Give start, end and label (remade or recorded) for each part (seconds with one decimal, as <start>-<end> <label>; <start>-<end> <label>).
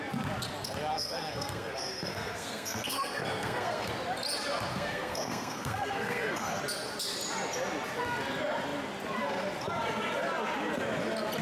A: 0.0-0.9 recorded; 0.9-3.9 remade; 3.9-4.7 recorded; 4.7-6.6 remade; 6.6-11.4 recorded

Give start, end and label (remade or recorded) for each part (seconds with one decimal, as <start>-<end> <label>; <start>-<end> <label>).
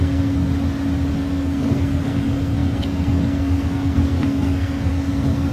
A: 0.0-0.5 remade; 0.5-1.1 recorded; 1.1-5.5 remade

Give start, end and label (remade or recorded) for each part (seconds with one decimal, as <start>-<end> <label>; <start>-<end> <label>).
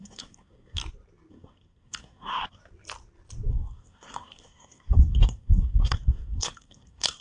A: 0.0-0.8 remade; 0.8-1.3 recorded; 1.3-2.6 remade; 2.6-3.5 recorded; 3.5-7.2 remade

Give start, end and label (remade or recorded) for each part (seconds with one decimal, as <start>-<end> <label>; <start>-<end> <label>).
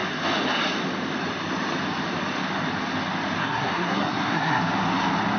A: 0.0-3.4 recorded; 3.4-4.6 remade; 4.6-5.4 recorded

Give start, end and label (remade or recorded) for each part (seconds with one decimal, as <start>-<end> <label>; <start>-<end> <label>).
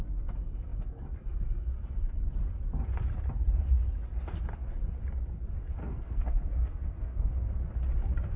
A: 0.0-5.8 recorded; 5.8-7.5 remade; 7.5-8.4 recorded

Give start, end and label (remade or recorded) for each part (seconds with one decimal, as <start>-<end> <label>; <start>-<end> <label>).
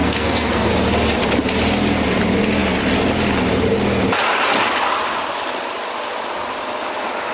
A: 0.0-0.7 remade; 0.7-7.3 recorded